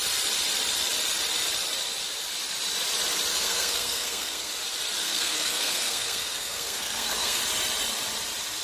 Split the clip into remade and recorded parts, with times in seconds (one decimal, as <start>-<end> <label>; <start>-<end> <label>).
0.0-3.3 recorded; 3.3-4.5 remade; 4.5-5.0 recorded; 5.0-7.4 remade; 7.4-8.6 recorded